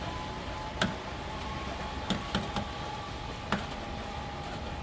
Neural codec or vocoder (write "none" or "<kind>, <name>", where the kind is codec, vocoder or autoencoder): none